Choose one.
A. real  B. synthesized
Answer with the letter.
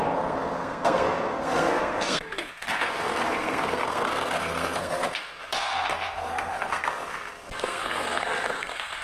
B